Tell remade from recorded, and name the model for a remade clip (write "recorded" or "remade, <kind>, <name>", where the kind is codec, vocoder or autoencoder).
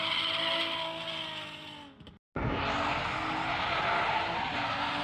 recorded